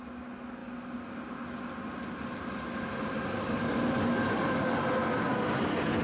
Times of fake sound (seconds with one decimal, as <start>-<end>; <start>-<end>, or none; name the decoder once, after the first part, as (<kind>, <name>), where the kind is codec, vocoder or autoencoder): none